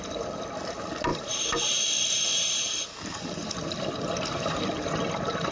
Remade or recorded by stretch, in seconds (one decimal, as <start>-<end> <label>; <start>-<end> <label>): 0.0-1.1 recorded; 1.1-1.7 remade; 1.7-2.3 recorded; 2.3-3.6 remade; 3.6-5.5 recorded